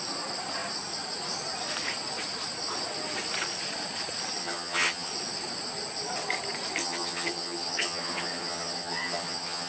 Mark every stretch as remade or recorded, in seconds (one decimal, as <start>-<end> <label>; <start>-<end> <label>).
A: 0.0-4.4 recorded; 4.4-5.1 remade; 5.1-6.8 recorded; 6.8-9.7 remade